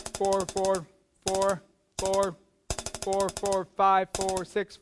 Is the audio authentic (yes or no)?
yes